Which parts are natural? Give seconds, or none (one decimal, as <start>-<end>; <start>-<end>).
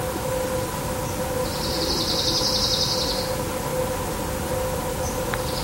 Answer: 0.0-5.6